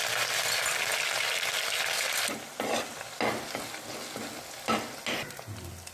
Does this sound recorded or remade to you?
recorded